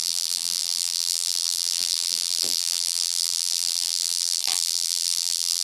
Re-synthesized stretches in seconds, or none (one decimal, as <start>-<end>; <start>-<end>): 0.0-5.6